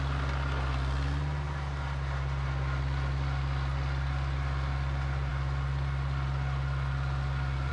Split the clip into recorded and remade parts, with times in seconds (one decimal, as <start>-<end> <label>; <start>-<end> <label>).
0.0-7.7 recorded